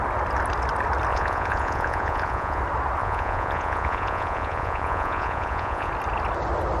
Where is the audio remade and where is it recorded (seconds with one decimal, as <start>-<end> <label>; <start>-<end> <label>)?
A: 0.0-1.1 recorded; 1.1-2.6 remade; 2.6-3.0 recorded; 3.0-5.9 remade; 5.9-6.8 recorded